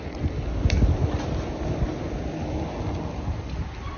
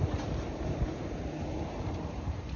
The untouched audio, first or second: first